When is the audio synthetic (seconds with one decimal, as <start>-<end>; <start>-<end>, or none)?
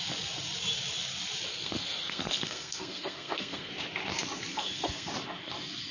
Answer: 1.5-3.7; 4.5-5.1